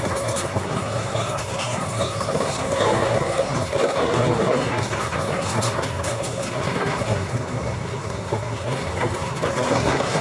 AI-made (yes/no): yes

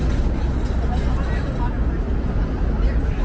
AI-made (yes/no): no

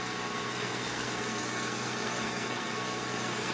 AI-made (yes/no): yes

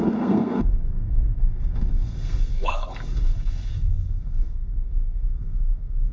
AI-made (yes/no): yes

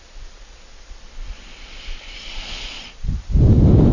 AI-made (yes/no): no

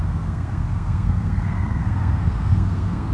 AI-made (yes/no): yes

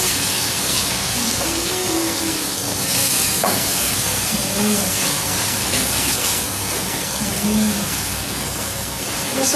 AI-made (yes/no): yes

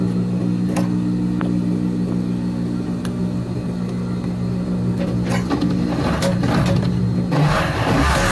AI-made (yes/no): no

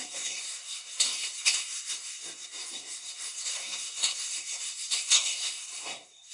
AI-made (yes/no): yes